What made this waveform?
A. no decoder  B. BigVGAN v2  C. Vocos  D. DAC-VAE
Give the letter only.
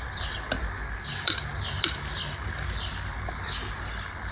A